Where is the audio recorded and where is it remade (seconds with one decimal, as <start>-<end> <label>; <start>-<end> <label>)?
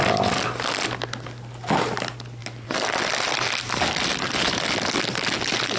0.0-2.4 recorded; 2.4-3.6 remade; 3.6-4.1 recorded; 4.1-5.2 remade; 5.2-5.8 recorded